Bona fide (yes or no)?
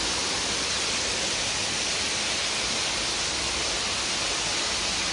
yes